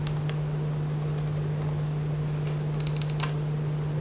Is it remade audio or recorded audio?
recorded